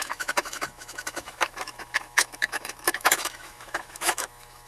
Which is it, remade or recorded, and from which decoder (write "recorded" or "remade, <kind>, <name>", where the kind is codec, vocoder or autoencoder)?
remade, autoencoder, DAC-VAE